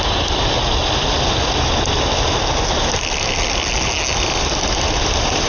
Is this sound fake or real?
real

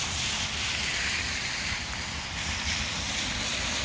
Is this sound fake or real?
fake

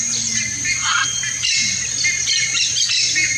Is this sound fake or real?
real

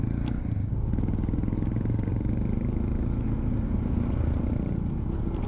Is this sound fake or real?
real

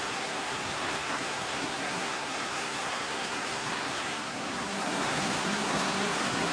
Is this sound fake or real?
fake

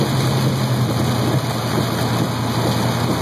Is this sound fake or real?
real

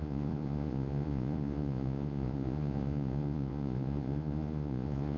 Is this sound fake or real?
fake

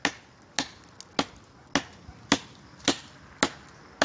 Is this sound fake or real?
real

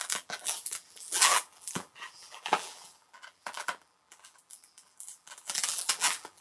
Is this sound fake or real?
fake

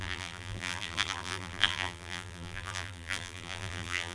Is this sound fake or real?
fake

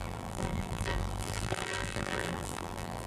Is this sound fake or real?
fake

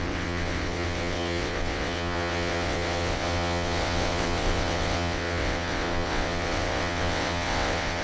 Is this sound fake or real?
fake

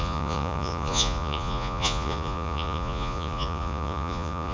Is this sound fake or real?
fake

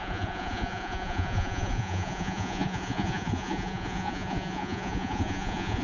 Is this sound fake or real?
fake